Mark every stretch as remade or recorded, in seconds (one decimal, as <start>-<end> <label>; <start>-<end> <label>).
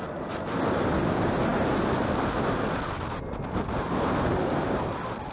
0.0-5.3 recorded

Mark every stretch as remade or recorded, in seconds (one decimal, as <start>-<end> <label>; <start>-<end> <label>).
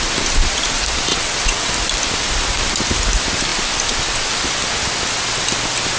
0.0-1.1 recorded; 1.1-1.7 remade; 1.7-6.0 recorded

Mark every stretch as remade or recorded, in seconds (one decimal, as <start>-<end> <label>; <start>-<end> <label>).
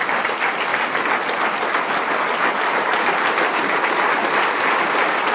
0.0-5.3 recorded